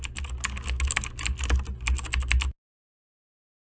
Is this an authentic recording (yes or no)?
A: yes